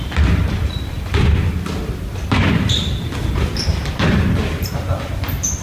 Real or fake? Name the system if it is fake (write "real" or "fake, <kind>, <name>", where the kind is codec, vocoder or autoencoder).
fake, vocoder, BigVGAN v2